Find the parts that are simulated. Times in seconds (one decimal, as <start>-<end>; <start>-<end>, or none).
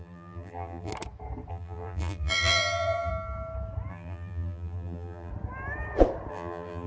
0.0-0.9; 1.5-3.1; 3.9-5.3; 6.3-6.9